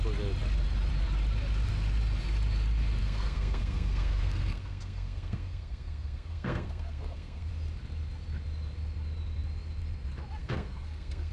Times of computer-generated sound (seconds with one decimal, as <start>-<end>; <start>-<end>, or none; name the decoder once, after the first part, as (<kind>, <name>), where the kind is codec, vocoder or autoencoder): 3.0-7.5 (codec, SNAC); 10.4-11.3

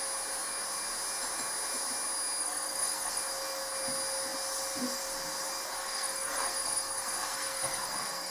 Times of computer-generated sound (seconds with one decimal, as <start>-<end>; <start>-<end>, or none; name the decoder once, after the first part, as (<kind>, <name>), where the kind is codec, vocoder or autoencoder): 2.4-3.2 (codec, SNAC); 5.8-8.3

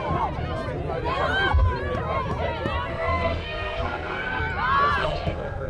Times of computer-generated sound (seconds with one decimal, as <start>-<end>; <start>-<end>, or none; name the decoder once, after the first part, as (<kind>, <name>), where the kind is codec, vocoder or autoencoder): 2.9-4.4 (codec, SNAC); 5.0-5.7

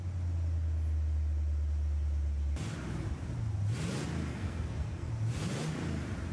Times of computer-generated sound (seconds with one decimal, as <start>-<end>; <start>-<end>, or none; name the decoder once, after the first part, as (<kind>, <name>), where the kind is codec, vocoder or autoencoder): 4.3-5.1 (codec, SNAC)

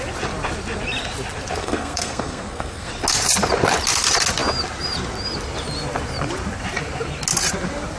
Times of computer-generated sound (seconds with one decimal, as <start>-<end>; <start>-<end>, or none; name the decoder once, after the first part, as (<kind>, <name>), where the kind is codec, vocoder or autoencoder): 1.6-2.9 (codec, SNAC)

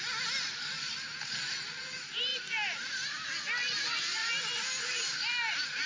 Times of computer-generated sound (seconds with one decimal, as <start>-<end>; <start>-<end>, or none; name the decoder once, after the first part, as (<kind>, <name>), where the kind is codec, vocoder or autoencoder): none

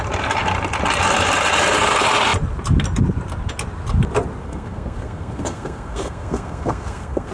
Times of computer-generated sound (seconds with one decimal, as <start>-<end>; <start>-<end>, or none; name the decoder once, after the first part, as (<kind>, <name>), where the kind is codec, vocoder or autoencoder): 4.4-7.3 (codec, SNAC)

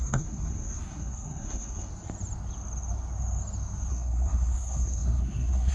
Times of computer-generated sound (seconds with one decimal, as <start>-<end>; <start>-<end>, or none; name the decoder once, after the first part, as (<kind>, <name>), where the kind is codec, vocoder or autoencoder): 0.0-1.9 (codec, SNAC); 3.9-5.7